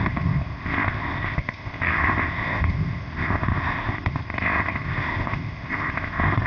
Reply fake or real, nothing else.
fake